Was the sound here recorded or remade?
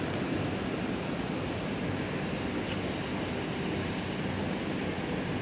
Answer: recorded